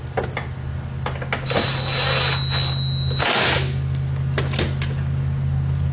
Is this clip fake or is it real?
real